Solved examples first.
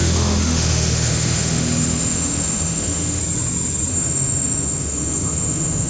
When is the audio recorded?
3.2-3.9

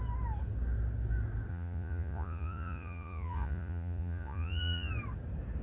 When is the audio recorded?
0.0-1.5; 4.9-5.6

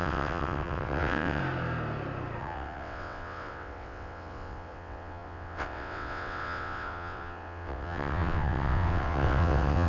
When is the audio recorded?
1.4-2.4

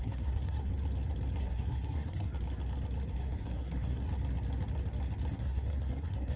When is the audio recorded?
0.7-1.4; 2.3-3.1; 4.1-5.3